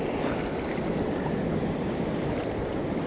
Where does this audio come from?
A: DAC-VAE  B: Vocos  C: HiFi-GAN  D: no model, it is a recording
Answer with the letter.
D